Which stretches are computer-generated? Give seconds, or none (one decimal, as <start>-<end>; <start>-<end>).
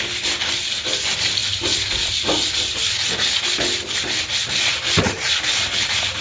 none